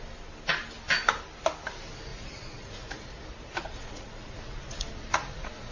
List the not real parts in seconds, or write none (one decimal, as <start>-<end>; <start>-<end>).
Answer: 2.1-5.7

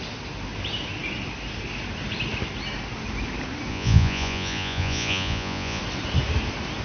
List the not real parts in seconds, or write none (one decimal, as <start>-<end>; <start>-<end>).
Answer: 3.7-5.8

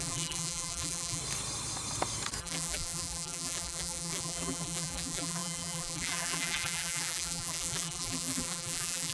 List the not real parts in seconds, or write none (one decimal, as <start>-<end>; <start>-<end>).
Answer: 0.0-1.2; 2.4-9.1

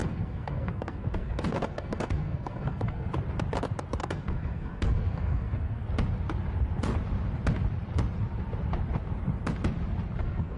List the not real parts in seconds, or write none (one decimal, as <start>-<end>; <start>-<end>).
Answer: 0.0-3.1; 4.0-5.8; 10.2-10.6

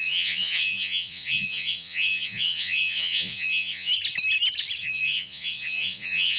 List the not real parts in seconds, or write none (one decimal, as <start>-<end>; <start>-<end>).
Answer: 0.0-3.9; 4.8-6.4

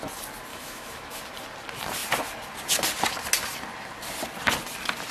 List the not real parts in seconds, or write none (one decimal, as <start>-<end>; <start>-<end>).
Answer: 0.5-1.2